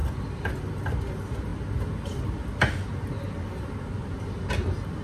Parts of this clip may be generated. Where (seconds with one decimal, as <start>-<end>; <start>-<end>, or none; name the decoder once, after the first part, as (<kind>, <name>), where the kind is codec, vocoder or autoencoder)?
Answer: none